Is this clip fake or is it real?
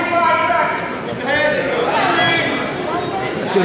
real